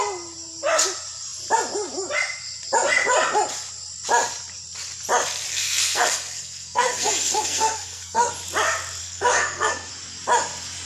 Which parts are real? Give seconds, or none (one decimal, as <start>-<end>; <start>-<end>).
0.0-5.5; 8.3-9.0; 9.9-10.9